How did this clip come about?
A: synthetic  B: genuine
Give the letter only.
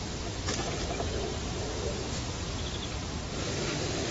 B